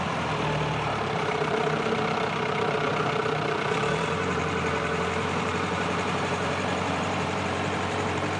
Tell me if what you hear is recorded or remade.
remade